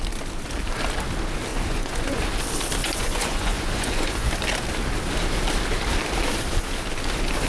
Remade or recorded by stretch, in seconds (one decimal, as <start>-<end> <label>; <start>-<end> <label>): 0.0-1.5 recorded; 1.5-2.2 remade; 2.2-2.8 recorded; 2.8-4.3 remade; 4.3-7.5 recorded